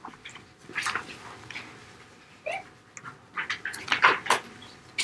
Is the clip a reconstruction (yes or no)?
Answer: no